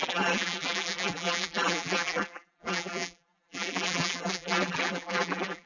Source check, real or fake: fake